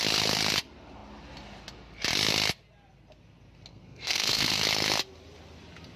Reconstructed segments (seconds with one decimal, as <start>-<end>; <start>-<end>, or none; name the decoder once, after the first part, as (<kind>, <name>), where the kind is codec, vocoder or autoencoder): 3.7-4.6 (codec, SNAC)